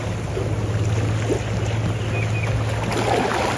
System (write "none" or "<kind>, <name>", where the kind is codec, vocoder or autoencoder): none